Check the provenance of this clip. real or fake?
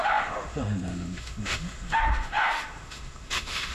fake